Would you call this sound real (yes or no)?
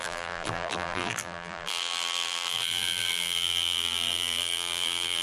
no